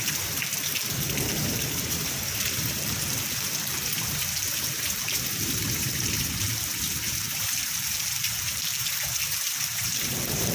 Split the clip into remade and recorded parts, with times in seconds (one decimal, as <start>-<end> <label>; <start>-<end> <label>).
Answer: 0.0-10.5 remade